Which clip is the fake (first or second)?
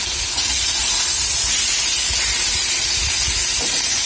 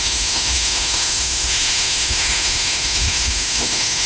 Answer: second